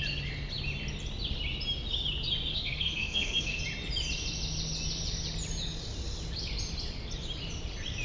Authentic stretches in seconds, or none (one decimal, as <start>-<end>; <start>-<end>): 0.0-2.5; 3.6-8.0